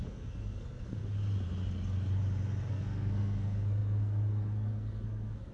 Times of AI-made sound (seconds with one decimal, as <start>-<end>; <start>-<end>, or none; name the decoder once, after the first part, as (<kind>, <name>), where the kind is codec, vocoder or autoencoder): 0.0-1.0 (codec, SNAC); 2.7-5.5